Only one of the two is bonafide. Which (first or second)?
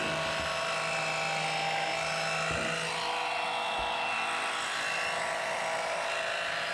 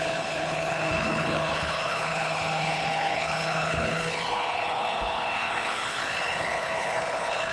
first